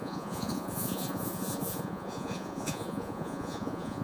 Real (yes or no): no